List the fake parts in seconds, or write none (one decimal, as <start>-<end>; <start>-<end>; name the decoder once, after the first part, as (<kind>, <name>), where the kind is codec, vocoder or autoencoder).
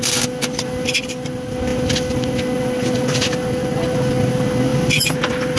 none